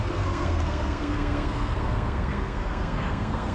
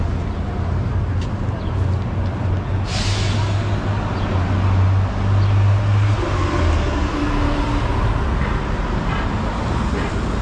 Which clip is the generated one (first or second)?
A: first